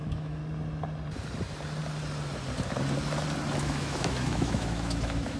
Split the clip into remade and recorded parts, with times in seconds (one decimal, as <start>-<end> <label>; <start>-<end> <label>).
0.0-0.4 remade; 0.4-3.6 recorded; 3.6-5.4 remade